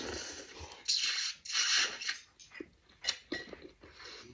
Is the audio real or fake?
real